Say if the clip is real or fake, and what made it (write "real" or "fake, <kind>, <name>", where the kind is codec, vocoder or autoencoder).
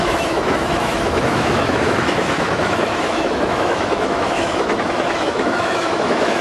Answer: fake, autoencoder, DAC-VAE